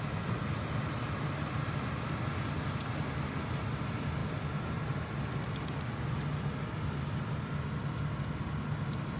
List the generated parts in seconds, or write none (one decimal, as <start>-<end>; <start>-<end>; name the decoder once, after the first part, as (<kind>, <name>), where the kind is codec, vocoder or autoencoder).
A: none